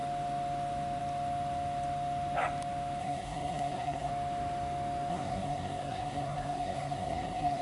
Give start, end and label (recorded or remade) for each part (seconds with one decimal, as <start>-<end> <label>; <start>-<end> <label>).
0.0-3.0 recorded; 3.0-4.1 remade; 4.1-5.1 recorded; 5.1-7.6 remade